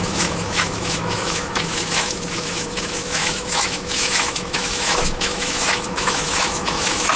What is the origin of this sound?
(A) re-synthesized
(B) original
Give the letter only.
A